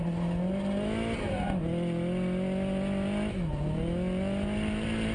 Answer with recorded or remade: recorded